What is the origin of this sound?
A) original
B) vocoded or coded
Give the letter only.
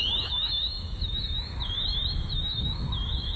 B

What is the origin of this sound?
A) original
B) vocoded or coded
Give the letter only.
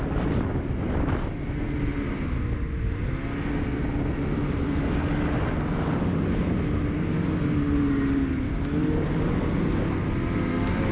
A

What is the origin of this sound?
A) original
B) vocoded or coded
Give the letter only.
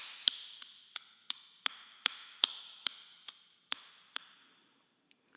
A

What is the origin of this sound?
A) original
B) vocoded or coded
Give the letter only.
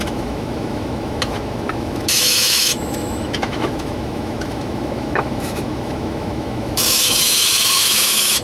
B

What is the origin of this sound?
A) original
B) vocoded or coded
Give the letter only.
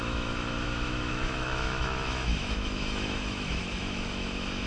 B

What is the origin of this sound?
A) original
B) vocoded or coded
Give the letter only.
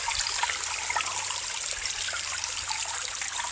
A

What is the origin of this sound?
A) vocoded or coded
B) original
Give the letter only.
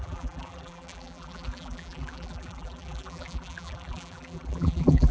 A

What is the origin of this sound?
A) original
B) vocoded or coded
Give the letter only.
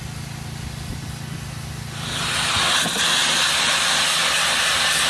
A